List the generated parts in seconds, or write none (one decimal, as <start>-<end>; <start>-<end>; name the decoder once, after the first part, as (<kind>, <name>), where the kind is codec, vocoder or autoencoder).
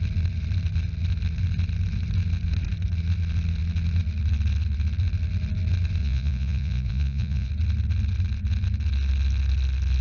6.0-7.5 (vocoder, Vocos)